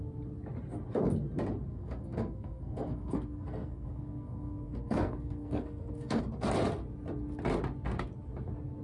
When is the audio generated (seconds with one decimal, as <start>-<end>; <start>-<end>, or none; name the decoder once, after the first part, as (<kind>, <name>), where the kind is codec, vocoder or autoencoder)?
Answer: 1.7-6.2 (codec, SNAC)